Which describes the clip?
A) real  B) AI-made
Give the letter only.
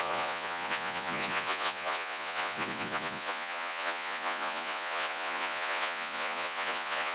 B